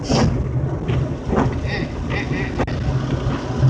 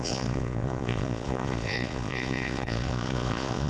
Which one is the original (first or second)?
first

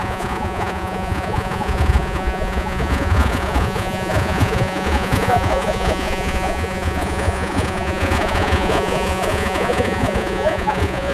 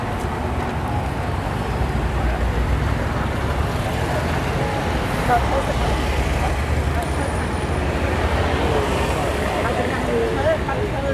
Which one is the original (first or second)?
second